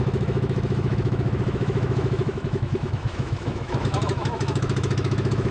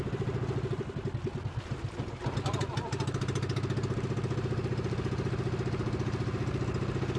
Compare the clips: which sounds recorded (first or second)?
second